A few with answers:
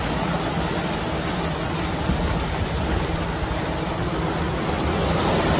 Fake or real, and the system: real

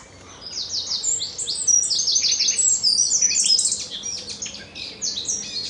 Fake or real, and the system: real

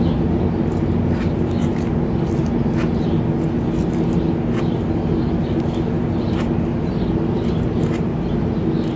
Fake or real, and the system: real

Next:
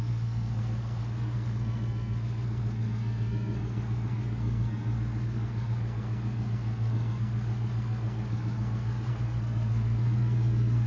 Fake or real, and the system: fake, codec, SNAC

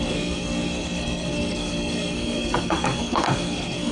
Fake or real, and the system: fake, codec, SNAC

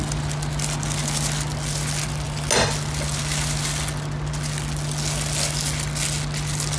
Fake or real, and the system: real